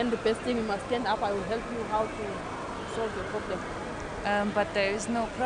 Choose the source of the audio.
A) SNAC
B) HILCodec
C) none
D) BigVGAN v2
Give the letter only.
C